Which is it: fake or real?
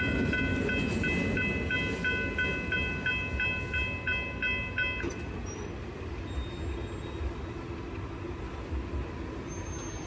real